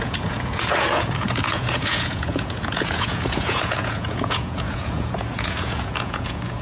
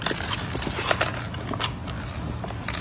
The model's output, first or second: first